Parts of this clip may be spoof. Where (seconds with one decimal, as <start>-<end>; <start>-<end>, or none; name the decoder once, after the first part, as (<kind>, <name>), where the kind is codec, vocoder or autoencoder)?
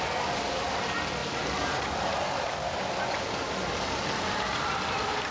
none